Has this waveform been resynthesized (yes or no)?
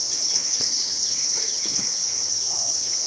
yes